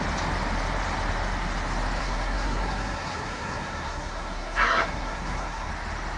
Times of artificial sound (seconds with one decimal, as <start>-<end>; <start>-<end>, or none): 2.0-5.7